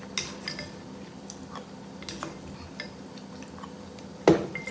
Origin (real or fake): real